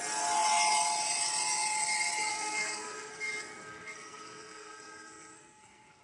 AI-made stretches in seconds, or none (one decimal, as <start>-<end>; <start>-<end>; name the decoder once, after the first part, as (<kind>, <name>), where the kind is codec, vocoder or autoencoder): 2.3-6.0 (codec, SNAC)